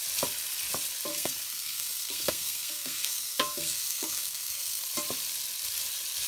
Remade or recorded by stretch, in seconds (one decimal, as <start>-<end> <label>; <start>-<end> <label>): 0.0-1.1 recorded; 1.1-4.8 remade; 4.8-6.3 recorded